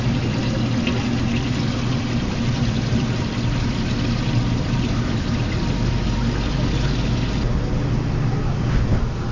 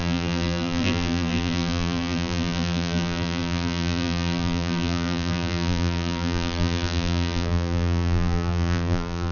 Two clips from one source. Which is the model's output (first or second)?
second